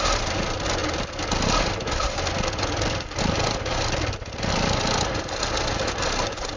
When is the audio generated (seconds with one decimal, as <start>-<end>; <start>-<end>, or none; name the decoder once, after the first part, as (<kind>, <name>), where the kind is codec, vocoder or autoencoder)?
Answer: none